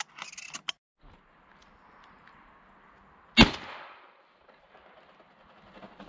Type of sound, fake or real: real